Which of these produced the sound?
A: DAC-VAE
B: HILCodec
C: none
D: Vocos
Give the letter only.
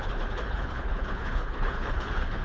B